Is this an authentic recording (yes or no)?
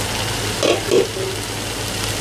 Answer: yes